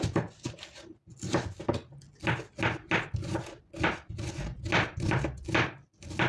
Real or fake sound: real